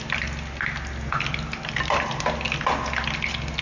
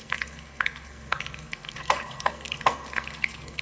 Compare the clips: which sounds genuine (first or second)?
first